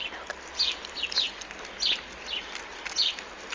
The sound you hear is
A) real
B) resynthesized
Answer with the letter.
A